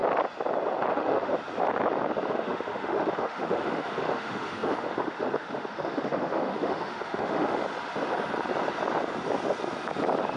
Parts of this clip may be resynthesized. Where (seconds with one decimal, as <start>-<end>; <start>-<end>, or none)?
0.9-1.3; 2.3-7.6